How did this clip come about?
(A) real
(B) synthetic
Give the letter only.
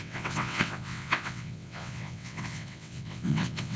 B